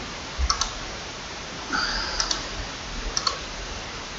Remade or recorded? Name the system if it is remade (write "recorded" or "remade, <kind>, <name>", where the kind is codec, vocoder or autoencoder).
remade, vocoder, BigVGAN v2